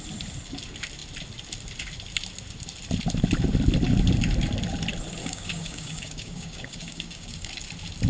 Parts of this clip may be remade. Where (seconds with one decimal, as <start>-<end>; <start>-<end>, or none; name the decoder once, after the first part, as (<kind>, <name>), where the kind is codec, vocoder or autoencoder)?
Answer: 5.2-7.5 (codec, DAC)